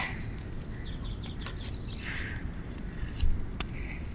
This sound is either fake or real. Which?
real